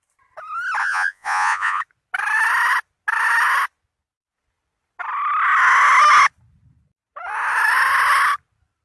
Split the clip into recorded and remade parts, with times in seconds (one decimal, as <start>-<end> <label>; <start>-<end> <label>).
0.0-0.8 recorded; 0.8-1.8 remade; 1.8-8.8 recorded

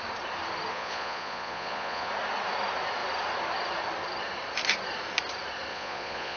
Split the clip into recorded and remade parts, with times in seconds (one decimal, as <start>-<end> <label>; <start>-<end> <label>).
0.0-0.7 recorded; 0.7-2.1 remade; 2.1-5.7 recorded; 5.7-6.4 remade

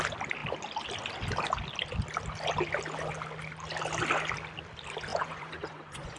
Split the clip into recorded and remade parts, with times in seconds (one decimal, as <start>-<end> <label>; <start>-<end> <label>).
0.0-5.1 recorded; 5.1-6.2 remade

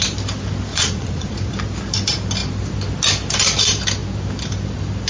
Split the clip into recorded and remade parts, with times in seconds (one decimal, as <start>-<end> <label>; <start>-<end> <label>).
0.0-0.7 recorded; 0.7-1.5 remade; 1.5-5.1 recorded

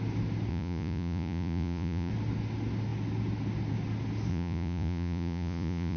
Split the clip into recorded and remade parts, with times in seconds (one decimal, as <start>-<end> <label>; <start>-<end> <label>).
0.0-0.5 recorded; 0.5-2.1 remade; 2.1-4.3 recorded; 4.3-6.0 remade

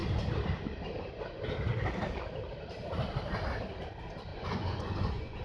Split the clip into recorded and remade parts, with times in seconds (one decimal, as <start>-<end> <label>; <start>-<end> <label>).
0.0-4.3 recorded; 4.3-5.4 remade

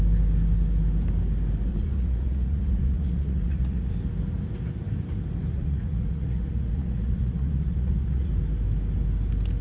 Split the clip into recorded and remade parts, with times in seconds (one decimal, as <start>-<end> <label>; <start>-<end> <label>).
0.0-1.7 recorded; 1.7-3.9 remade; 3.9-5.5 recorded; 5.5-8.3 remade; 8.3-9.6 recorded

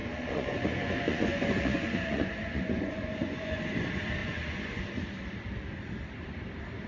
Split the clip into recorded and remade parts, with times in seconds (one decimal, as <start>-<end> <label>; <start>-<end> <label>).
0.0-3.6 remade; 3.6-4.2 recorded; 4.2-4.8 remade; 4.8-6.9 recorded